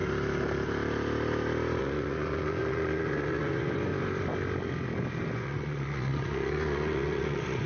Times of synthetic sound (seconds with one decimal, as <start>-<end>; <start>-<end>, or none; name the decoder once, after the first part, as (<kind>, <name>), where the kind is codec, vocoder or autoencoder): 1.8-3.9 (vocoder, Vocos); 5.3-7.7